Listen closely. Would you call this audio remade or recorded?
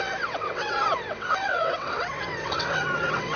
remade